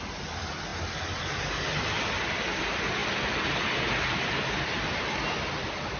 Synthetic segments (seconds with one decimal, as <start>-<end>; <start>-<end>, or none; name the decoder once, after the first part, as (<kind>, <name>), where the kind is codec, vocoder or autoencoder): none